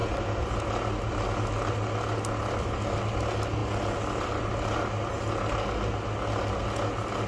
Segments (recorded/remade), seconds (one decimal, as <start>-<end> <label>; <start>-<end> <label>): 0.0-7.3 recorded